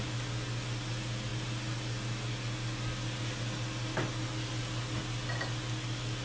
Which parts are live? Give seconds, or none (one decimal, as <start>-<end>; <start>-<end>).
0.0-6.2